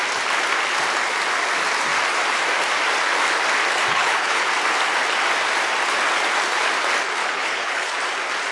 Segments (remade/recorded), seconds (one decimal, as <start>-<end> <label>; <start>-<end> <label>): 0.0-3.9 recorded; 3.9-4.5 remade; 4.5-7.2 recorded; 7.2-8.0 remade; 8.0-8.5 recorded